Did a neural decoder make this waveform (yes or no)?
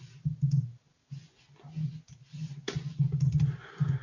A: no